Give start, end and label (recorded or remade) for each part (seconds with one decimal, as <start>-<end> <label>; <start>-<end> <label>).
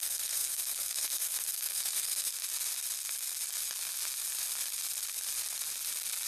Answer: 0.0-2.3 remade; 2.3-6.3 recorded